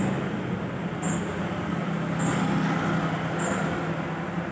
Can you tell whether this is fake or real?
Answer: real